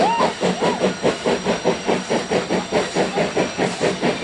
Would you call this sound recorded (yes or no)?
yes